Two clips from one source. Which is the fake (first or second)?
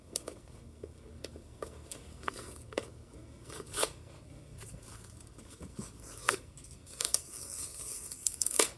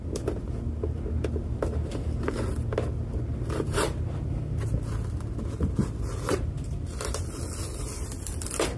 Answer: first